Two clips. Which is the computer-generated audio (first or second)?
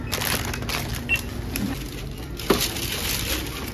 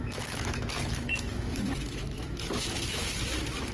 second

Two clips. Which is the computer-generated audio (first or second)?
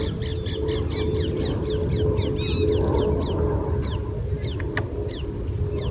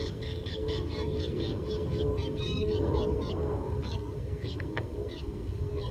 second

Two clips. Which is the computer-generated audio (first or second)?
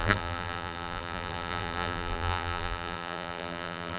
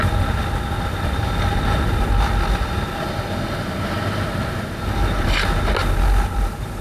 first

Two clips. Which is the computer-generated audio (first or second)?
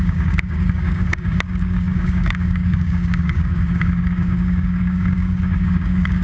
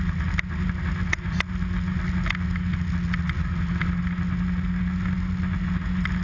first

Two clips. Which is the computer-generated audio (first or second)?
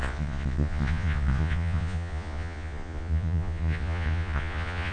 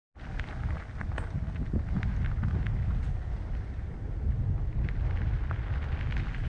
first